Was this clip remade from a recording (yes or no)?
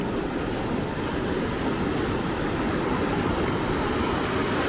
no